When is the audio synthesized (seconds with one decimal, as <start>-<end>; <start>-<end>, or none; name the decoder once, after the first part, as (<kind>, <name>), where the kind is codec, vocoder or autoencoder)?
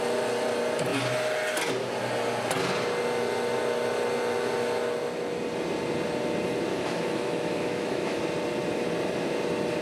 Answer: 6.7-8.2 (autoencoder, DAC-VAE)